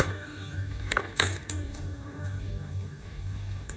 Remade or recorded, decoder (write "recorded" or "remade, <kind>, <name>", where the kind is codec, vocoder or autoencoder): remade, codec, DAC